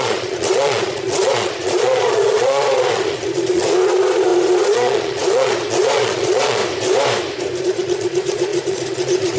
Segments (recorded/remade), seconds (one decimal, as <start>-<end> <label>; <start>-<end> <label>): 0.0-6.6 remade; 6.6-7.6 recorded; 7.6-9.4 remade